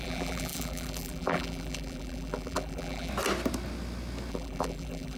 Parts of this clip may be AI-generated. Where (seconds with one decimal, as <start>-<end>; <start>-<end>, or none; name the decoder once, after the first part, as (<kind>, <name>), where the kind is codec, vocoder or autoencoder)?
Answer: 0.0-3.1 (vocoder, BigVGAN v2); 4.3-5.2